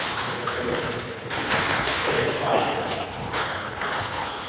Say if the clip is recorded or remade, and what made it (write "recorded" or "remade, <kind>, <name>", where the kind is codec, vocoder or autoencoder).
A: remade, codec, HILCodec